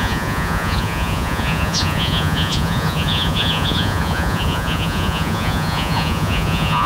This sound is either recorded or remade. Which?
remade